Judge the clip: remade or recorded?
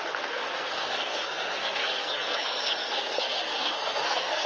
remade